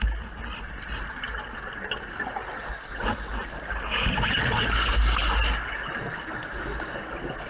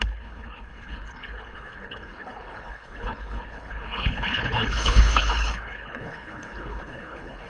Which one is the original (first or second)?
first